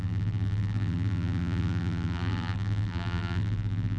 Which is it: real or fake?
fake